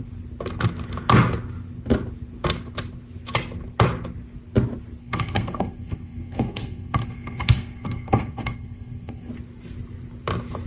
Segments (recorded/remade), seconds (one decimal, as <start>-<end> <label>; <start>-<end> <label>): 0.0-5.0 recorded; 5.0-9.3 remade; 9.3-10.7 recorded

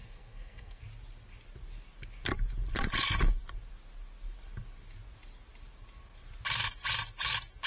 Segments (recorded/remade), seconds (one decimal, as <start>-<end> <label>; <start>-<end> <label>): 0.0-0.8 remade; 0.8-7.7 recorded

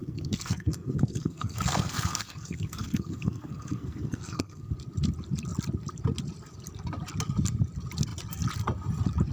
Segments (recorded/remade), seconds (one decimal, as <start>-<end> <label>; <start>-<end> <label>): 0.0-4.7 remade; 4.7-9.3 recorded

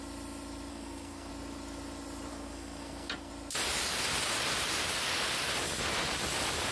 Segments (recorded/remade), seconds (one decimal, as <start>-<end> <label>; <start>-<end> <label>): 0.0-0.7 recorded; 0.7-1.3 remade; 1.3-2.3 recorded; 2.3-3.3 remade; 3.3-6.7 recorded